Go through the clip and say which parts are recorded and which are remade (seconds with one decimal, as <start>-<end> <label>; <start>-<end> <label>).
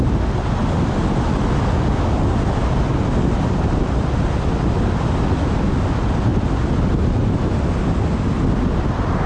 0.0-9.3 recorded